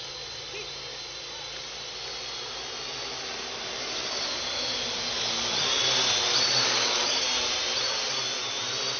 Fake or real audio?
real